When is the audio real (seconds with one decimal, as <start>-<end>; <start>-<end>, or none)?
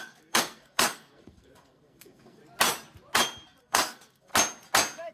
2.4-3.6; 4.3-5.1